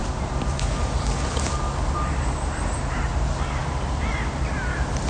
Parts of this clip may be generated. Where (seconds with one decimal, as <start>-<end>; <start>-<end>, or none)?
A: none